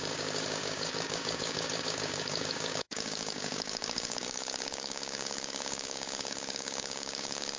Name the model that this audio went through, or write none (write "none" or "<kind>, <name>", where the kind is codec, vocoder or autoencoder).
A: codec, DAC